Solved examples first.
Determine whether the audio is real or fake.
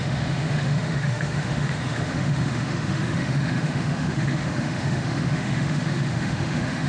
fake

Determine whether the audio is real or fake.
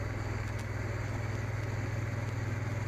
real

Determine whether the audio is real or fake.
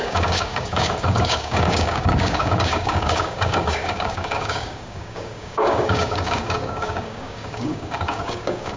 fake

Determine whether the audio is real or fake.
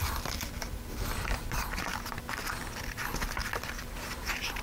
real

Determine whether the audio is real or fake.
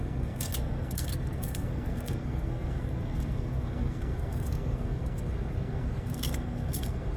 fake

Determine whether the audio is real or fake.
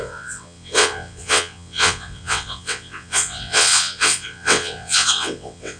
fake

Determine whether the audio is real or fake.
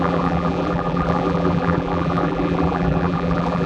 fake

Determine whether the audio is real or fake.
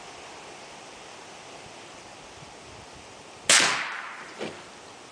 real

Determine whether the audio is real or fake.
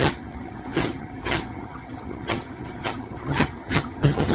fake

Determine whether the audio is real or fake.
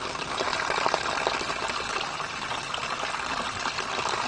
real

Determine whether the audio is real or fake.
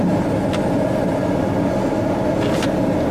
real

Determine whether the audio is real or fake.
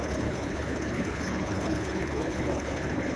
fake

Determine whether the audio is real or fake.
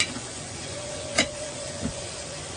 fake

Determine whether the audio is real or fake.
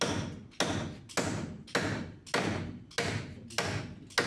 real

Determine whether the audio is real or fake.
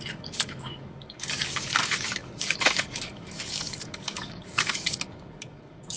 fake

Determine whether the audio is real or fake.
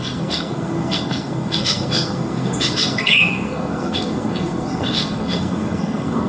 fake